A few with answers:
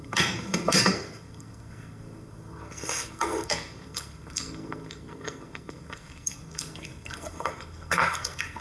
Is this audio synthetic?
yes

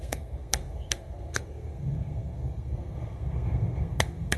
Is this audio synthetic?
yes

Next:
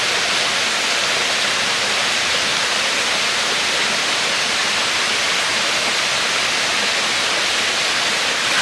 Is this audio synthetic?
no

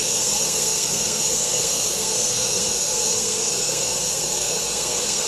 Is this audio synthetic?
yes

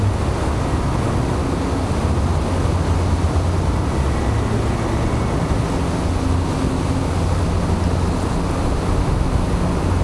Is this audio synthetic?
no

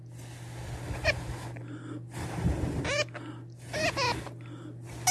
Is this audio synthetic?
no